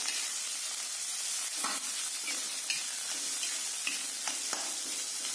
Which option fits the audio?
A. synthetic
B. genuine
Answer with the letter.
B